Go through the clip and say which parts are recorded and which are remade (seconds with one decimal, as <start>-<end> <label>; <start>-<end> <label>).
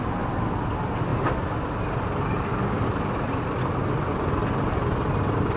0.0-5.6 recorded